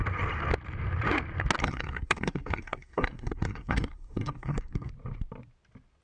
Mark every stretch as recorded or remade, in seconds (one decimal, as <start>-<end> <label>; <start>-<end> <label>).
0.0-1.6 recorded; 1.6-4.9 remade; 4.9-6.0 recorded